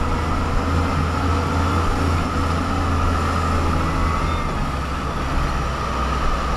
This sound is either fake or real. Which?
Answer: real